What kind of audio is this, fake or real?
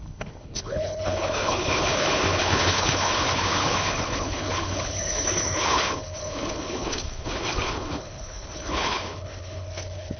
fake